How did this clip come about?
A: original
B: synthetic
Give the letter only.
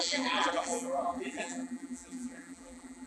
B